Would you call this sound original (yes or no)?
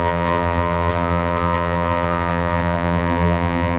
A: no